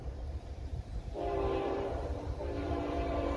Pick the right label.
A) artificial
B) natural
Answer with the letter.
A